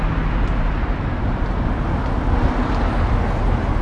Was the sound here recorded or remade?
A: recorded